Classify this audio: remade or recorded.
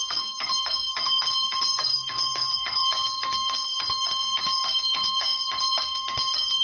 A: remade